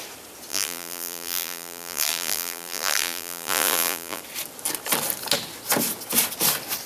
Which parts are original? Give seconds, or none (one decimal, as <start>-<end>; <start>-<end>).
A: 0.0-0.5; 4.2-6.9